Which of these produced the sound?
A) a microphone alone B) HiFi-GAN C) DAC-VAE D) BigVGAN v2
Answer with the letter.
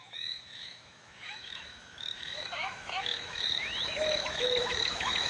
C